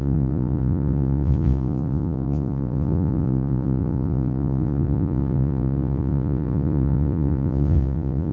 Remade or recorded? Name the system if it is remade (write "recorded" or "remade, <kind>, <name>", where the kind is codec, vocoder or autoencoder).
remade, vocoder, Vocos